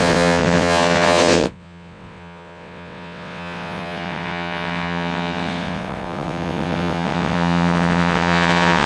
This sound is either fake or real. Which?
fake